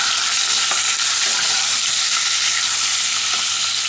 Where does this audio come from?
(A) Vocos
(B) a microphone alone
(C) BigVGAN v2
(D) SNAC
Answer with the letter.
B